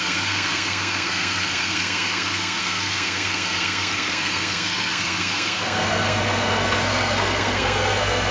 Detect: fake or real fake